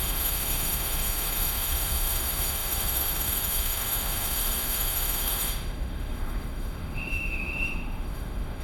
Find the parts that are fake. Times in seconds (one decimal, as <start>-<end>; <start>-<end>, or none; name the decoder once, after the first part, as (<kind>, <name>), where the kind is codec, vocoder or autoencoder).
0.0-8.6 (autoencoder, DAC-VAE)